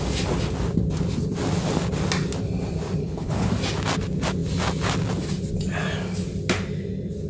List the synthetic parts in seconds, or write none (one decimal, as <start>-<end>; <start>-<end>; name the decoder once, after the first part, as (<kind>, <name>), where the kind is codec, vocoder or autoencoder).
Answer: 3.0-3.5 (codec, HILCodec)